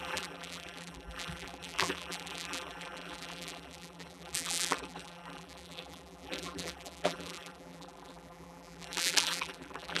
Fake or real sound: fake